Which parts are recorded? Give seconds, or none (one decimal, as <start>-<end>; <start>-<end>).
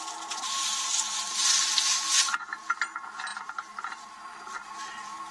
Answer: 0.0-0.9; 1.4-1.9; 2.5-3.3; 3.9-5.3